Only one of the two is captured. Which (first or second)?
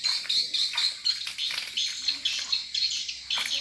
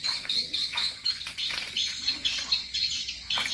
first